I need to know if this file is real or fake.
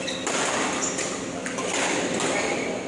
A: real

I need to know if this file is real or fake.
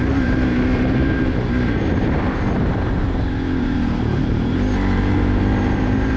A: fake